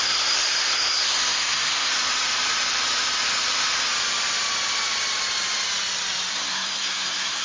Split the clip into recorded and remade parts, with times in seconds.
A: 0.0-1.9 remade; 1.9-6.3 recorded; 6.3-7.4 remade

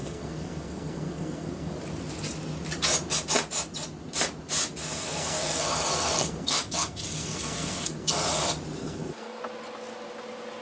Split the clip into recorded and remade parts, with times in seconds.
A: 0.0-1.7 remade; 1.7-4.8 recorded; 4.8-8.1 remade; 8.1-8.8 recorded; 8.8-9.4 remade; 9.4-10.6 recorded

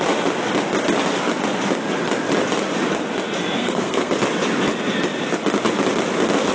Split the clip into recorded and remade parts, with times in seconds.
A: 0.0-3.6 recorded; 3.6-4.1 remade; 4.1-6.5 recorded